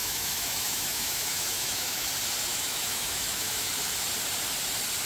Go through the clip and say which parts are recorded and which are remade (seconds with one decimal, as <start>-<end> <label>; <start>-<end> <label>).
0.0-2.1 remade; 2.1-2.5 recorded; 2.5-3.7 remade; 3.7-5.1 recorded